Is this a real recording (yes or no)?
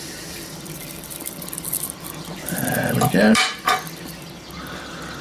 no